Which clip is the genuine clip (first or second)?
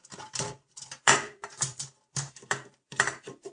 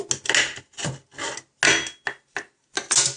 second